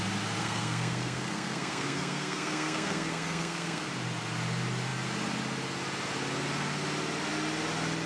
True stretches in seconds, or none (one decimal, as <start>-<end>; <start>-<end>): 0.0-0.4; 3.9-8.1